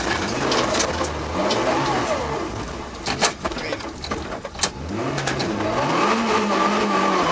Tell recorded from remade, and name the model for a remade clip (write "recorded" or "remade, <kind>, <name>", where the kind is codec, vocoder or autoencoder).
recorded